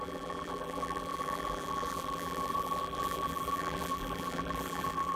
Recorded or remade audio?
remade